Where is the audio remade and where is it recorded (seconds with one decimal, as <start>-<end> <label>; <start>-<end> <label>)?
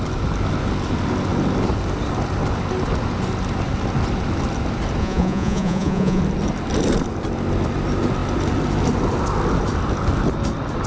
0.0-5.0 recorded; 5.0-6.2 remade; 6.2-10.9 recorded